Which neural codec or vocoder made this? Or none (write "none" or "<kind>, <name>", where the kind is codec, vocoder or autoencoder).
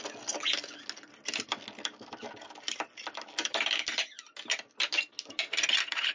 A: none